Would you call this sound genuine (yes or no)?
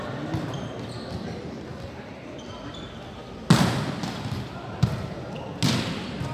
yes